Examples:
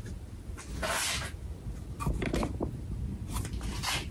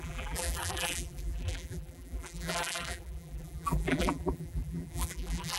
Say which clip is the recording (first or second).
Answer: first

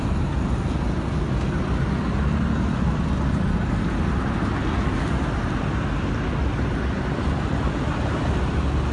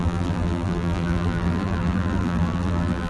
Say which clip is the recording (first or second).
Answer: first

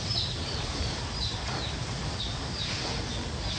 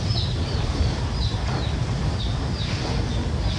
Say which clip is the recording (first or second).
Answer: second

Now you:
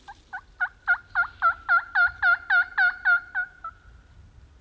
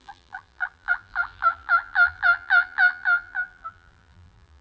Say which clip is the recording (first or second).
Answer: first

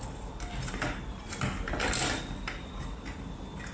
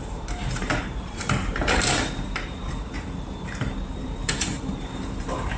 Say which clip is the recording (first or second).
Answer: first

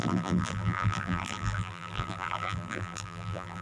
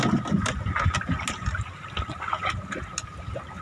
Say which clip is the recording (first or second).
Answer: second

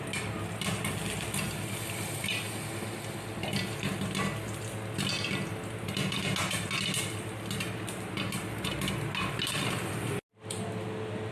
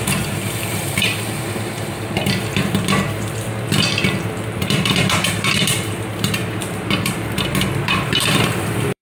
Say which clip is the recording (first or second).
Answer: first